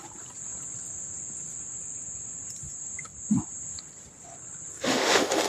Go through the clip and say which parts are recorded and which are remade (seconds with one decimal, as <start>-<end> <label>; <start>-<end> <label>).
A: 0.0-4.7 recorded; 4.7-5.5 remade